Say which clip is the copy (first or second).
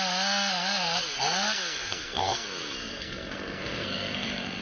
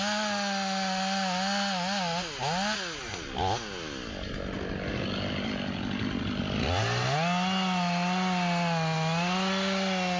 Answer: first